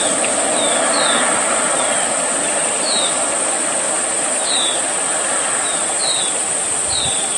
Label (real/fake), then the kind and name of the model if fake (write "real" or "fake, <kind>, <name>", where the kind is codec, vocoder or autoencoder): real